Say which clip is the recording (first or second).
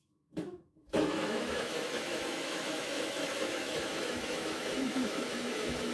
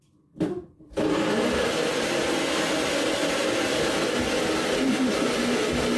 second